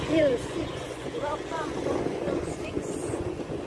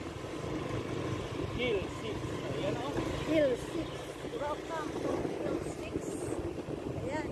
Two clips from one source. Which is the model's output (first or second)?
first